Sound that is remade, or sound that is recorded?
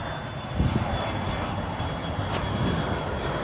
recorded